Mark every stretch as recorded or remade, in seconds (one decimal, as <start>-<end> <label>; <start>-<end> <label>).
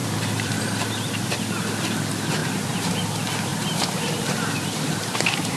0.0-0.6 remade; 0.6-2.4 recorded; 2.4-3.0 remade; 3.0-3.5 recorded; 3.5-5.6 remade